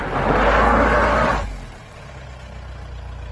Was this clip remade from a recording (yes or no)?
no